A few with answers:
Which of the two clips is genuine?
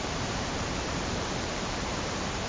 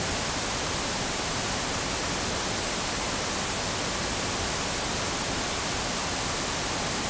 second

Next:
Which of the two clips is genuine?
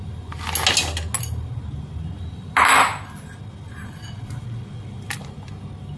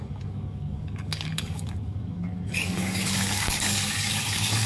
first